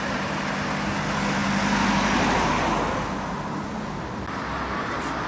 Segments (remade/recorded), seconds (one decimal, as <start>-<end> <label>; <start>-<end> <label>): 0.0-5.3 recorded